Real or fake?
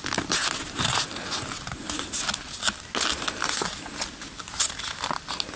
real